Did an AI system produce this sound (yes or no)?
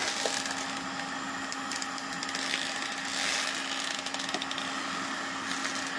no